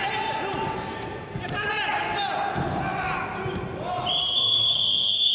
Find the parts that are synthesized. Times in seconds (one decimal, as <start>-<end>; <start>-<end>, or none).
4.2-5.3